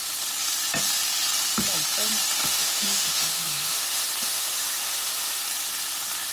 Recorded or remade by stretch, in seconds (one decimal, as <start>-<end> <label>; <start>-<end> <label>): 0.0-2.4 recorded; 2.4-5.4 remade; 5.4-6.3 recorded